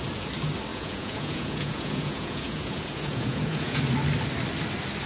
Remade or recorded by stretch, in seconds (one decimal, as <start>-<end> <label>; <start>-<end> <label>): 0.0-0.7 recorded; 0.7-3.8 remade; 3.8-5.1 recorded